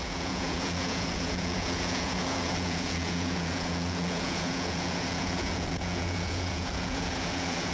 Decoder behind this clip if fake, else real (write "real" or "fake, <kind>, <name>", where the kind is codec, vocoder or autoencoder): fake, vocoder, Vocos